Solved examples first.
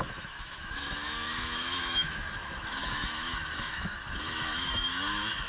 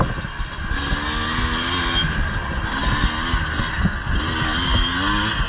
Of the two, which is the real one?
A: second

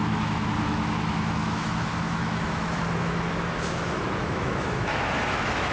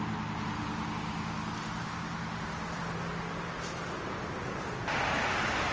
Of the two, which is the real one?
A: second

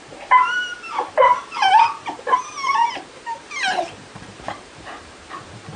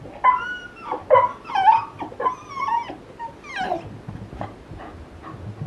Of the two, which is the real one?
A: second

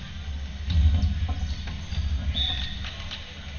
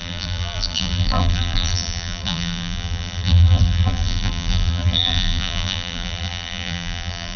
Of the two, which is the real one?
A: first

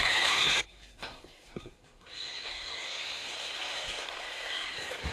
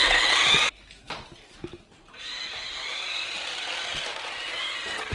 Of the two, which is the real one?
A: second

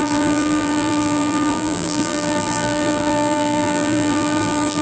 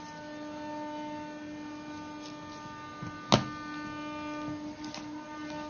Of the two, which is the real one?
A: second